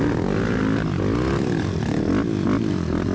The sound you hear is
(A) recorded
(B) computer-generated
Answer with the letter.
A